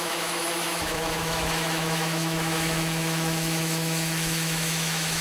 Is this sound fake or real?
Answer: fake